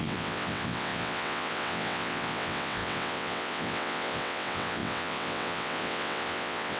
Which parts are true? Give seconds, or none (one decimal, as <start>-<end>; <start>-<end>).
none